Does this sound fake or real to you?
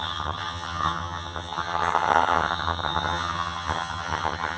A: fake